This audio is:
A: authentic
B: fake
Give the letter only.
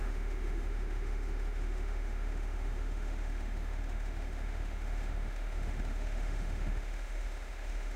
B